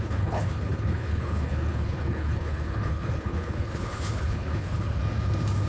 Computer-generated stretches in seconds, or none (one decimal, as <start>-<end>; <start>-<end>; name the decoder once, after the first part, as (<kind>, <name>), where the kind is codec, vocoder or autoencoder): 0.0-5.0 (codec, HILCodec)